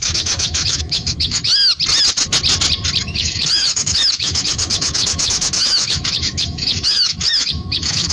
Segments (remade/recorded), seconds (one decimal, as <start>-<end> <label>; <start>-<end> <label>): 0.0-1.5 remade; 1.5-3.0 recorded; 3.0-8.1 remade